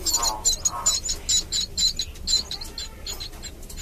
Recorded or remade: recorded